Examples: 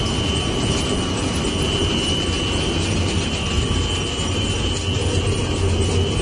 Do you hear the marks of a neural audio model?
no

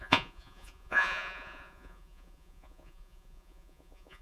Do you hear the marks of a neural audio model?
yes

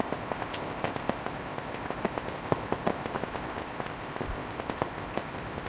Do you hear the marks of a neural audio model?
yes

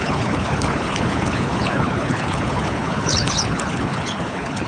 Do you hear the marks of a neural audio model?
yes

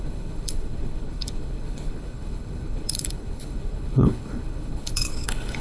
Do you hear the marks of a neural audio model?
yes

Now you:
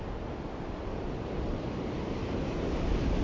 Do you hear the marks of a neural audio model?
no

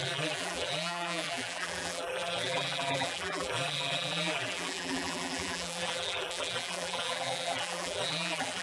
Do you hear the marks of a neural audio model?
yes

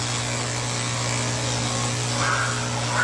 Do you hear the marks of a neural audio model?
no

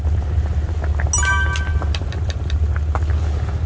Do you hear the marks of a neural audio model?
no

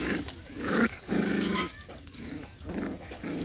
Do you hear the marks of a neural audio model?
yes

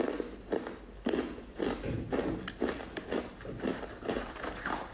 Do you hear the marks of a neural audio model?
no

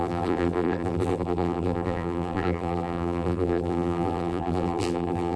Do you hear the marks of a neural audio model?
yes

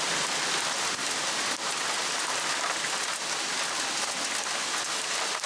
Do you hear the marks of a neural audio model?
no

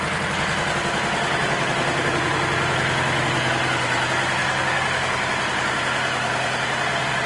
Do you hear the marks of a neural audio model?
no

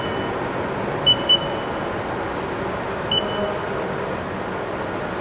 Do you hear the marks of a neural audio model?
no